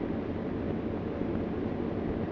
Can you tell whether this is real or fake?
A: real